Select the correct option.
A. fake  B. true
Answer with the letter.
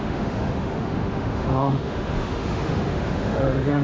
A